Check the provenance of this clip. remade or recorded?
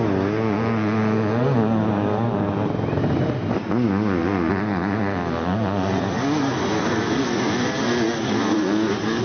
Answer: recorded